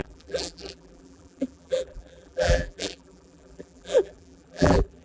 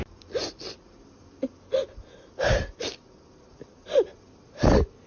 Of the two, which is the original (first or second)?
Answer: second